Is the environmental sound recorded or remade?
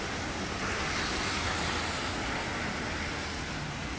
recorded